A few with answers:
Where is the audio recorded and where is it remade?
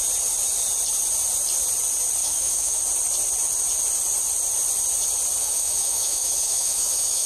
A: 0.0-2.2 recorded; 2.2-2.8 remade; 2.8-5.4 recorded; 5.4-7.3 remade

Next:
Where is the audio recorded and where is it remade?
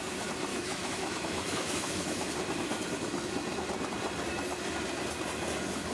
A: 0.0-0.5 recorded; 0.5-2.3 remade; 2.3-5.9 recorded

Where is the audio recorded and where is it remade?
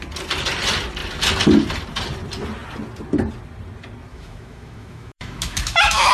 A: 0.0-4.1 recorded; 4.1-6.1 remade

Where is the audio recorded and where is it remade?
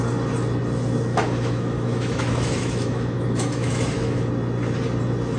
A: 0.0-1.1 recorded; 1.1-4.3 remade; 4.3-5.4 recorded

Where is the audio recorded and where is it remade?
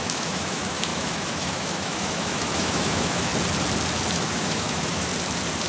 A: 0.0-3.3 remade; 3.3-4.1 recorded; 4.1-5.1 remade; 5.1-5.7 recorded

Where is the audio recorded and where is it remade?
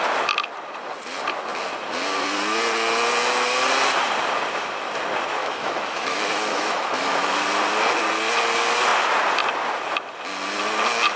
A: 0.0-5.4 recorded; 5.4-7.3 remade; 7.3-11.2 recorded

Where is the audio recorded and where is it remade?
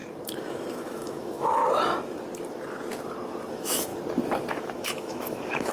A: 0.0-0.5 recorded; 0.5-1.6 remade; 1.6-3.5 recorded; 3.5-3.9 remade; 3.9-4.5 recorded; 4.5-5.7 remade